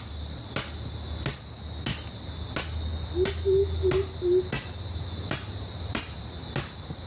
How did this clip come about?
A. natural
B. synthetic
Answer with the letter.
A